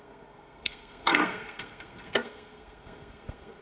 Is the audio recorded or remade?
remade